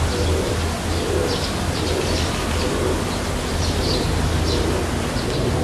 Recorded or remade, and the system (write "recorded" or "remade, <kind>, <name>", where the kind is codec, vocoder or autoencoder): recorded